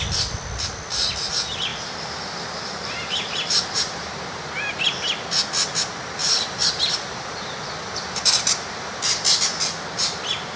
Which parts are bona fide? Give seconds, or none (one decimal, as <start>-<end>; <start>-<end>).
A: 0.0-1.7; 4.5-6.2; 9.0-10.6